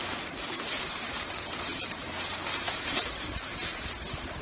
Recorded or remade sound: remade